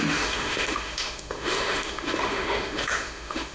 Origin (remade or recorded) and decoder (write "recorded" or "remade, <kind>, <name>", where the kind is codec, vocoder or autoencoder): remade, autoencoder, DAC-VAE